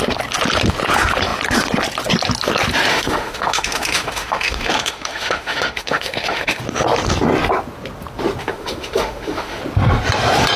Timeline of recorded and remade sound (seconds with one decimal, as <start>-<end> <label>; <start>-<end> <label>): 0.0-2.9 recorded; 2.9-6.6 remade; 6.6-8.4 recorded; 8.4-9.6 remade; 9.6-10.6 recorded